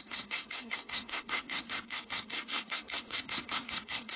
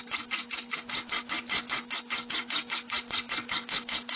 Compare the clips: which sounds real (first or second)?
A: second